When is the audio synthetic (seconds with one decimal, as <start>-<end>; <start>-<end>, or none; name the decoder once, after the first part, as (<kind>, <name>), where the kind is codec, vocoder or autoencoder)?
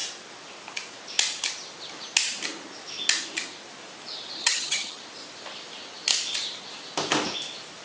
4.4-5.0 (vocoder, HiFi-GAN)